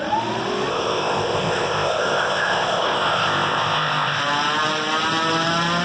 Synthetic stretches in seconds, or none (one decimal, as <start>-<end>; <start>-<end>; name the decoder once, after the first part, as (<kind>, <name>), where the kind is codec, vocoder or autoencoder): 0.7-4.2 (codec, ZipCodec)